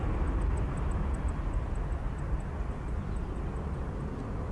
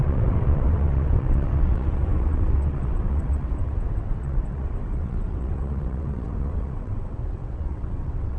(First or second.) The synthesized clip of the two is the second